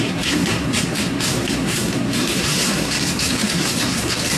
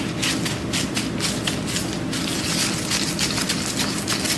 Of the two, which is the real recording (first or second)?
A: second